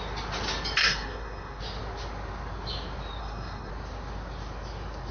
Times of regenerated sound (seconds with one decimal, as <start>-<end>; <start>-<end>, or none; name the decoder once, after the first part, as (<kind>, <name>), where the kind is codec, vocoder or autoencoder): 0.8-1.6 (codec, SNAC); 3.2-3.7